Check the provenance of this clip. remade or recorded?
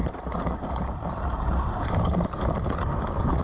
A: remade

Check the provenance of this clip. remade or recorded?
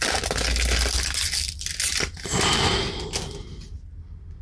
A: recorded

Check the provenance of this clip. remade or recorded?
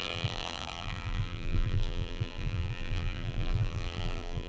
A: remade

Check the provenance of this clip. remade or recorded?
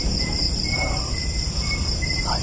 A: recorded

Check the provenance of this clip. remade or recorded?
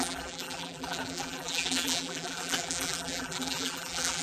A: remade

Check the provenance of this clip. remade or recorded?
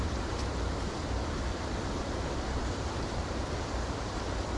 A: remade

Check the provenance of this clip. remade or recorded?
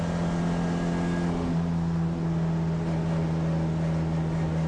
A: recorded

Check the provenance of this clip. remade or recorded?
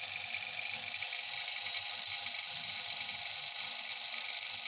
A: remade